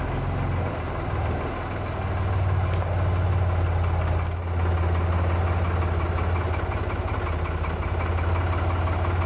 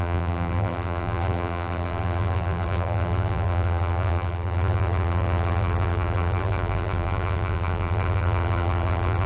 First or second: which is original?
first